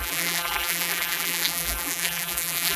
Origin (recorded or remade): remade